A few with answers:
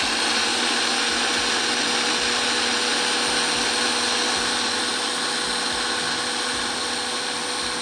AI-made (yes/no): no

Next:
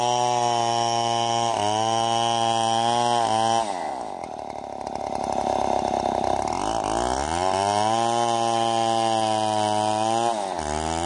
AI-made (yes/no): no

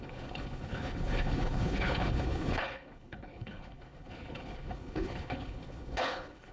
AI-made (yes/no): yes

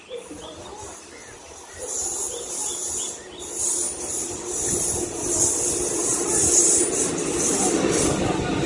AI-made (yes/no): no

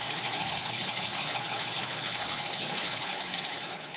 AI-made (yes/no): yes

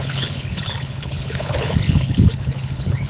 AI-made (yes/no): yes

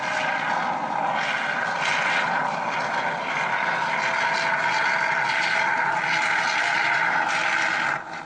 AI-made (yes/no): no